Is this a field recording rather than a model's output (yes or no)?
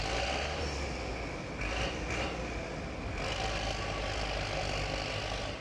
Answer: yes